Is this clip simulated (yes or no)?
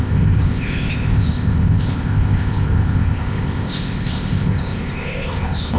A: yes